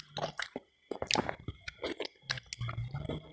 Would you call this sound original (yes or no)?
yes